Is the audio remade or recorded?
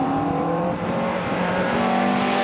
remade